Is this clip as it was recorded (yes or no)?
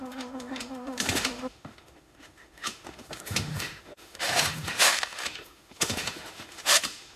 no